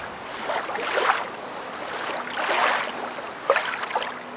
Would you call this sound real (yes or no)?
yes